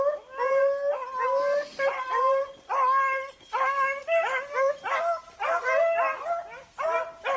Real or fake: real